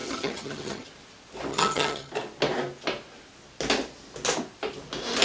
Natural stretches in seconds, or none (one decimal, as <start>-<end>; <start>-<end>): 0.9-1.5; 2.1-5.2